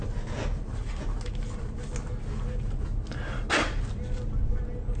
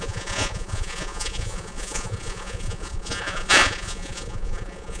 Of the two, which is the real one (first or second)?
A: first